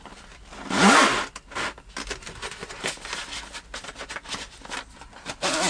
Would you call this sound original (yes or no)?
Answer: yes